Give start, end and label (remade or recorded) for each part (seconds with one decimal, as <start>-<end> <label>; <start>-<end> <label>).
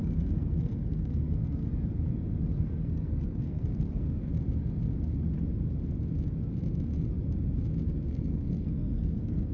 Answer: 0.0-1.6 remade; 1.6-2.5 recorded; 2.5-4.3 remade; 4.3-8.1 recorded; 8.1-9.5 remade